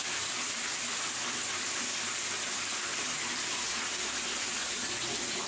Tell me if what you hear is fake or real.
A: real